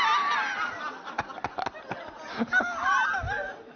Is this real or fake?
real